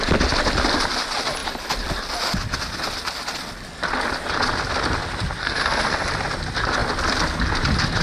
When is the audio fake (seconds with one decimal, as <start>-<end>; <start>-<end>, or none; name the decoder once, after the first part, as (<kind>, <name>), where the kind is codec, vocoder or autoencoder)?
5.4-6.1 (codec, SNAC)